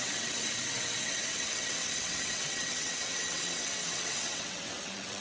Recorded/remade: remade